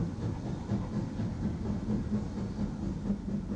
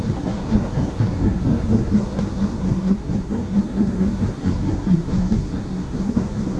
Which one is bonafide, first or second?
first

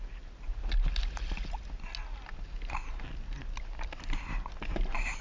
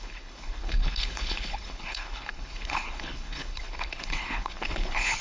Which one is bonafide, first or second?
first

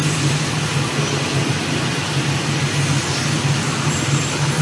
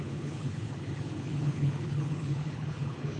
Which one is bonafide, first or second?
first